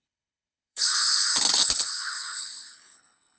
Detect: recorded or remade remade